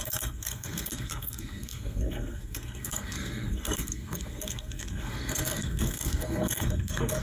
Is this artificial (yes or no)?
yes